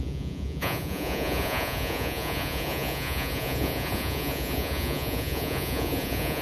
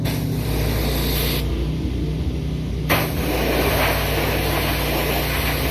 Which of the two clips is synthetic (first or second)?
first